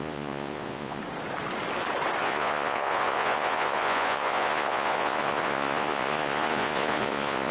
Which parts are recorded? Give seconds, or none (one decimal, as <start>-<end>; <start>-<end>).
1.0-2.2